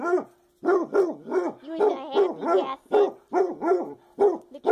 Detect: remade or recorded recorded